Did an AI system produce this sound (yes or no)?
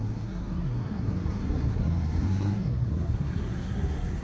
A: yes